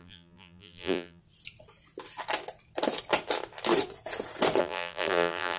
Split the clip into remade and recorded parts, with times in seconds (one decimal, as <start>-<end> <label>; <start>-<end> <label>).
0.0-1.2 remade; 1.2-4.6 recorded; 4.6-5.6 remade